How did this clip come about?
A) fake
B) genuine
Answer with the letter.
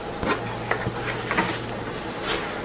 B